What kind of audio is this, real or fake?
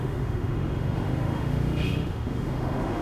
fake